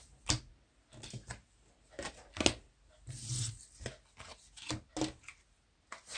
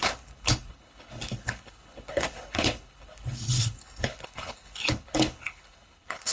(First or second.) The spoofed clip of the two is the second